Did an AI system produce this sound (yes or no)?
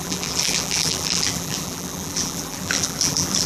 yes